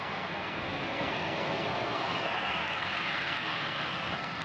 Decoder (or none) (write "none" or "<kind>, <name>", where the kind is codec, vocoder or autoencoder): codec, SNAC